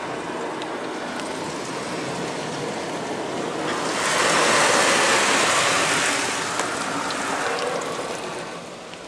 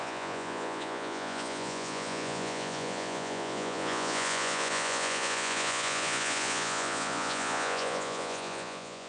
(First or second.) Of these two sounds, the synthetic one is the second